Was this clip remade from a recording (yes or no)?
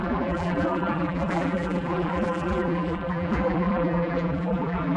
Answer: yes